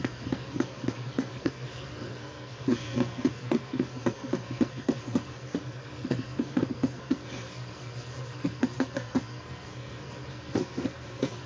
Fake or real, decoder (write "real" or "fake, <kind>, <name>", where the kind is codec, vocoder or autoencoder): fake, codec, SNAC